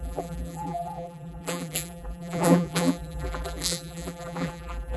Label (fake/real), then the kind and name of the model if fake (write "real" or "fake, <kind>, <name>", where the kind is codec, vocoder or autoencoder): fake, vocoder, BigVGAN v2